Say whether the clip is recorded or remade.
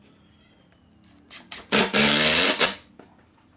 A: recorded